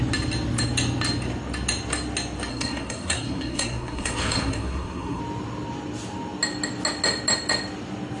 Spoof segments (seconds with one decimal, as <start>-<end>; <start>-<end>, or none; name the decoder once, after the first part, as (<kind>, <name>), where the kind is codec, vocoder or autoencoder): 2.5-5.2 (codec, SNAC)

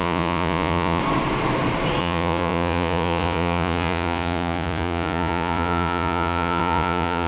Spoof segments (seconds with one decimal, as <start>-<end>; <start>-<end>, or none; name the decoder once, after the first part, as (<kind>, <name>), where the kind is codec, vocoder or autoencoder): 0.0-1.0 (vocoder, Vocos); 2.0-7.3

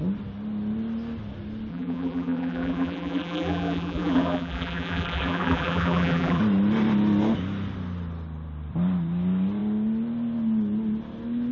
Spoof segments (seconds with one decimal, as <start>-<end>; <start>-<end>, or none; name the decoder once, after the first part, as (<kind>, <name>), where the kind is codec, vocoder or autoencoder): 1.7-6.4 (vocoder, BigVGAN v2)

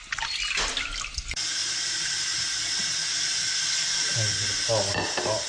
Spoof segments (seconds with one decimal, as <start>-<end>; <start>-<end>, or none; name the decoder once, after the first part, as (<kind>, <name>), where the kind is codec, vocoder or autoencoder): none